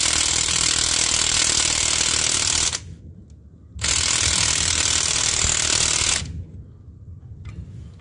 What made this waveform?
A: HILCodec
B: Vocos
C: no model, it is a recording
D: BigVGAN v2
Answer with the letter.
C